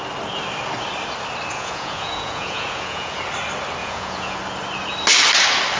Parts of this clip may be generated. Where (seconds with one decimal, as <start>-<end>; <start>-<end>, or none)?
1.5-3.2; 3.8-4.4